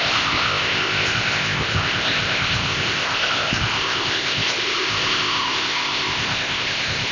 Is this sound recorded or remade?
remade